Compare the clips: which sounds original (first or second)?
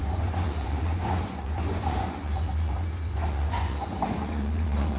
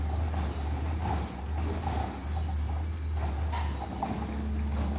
second